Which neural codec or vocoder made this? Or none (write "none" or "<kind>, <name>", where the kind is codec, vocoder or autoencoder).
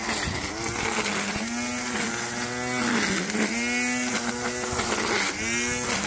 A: none